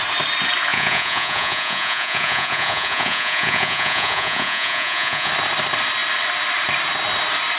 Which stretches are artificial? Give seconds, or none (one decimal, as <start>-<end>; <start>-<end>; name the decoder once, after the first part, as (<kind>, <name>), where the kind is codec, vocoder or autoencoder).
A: 0.7-5.3 (vocoder, Vocos)